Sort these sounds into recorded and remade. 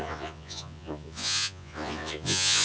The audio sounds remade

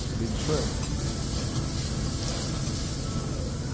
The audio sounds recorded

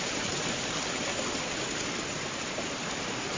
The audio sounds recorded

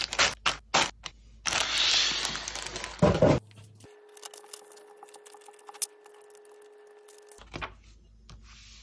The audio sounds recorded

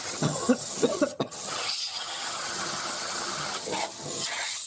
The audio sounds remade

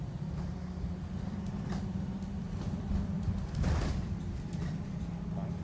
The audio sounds remade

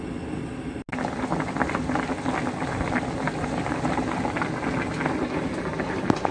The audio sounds recorded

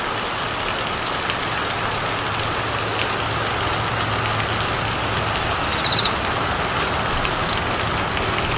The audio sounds recorded